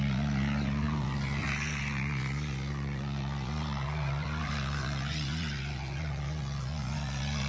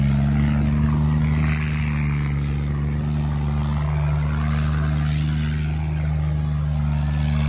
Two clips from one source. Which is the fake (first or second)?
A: first